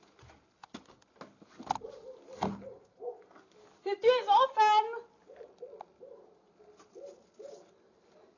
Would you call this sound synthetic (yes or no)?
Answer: no